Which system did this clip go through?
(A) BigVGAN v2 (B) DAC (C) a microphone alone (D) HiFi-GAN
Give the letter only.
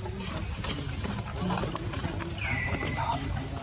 A